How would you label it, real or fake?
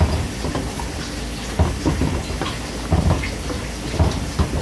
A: real